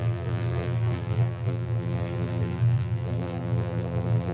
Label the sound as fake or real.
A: fake